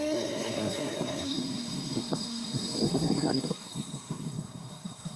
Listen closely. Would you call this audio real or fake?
fake